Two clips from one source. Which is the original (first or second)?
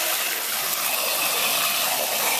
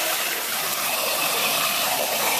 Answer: first